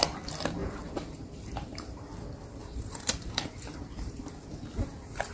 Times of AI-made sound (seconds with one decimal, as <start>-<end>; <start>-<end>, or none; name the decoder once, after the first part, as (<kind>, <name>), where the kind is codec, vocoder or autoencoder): 0.6-2.1 (vocoder, BigVGAN v2); 2.6-4.3